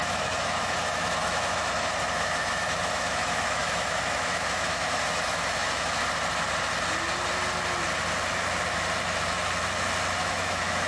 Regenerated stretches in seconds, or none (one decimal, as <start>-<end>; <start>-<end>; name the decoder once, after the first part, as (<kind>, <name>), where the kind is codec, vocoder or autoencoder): 0.0-6.0 (autoencoder, DAC-VAE); 10.2-10.9